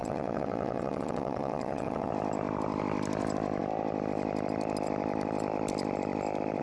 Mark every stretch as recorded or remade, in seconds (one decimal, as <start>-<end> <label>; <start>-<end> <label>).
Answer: 0.0-2.1 remade; 2.1-6.6 recorded